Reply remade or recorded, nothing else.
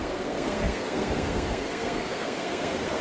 remade